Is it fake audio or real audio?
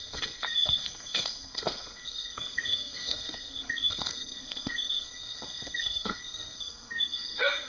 fake